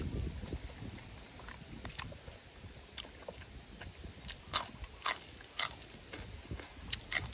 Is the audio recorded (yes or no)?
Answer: yes